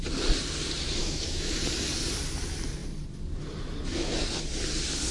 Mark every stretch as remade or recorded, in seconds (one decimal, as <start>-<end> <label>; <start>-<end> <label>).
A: 0.0-1.0 recorded; 1.0-1.6 remade; 1.6-5.1 recorded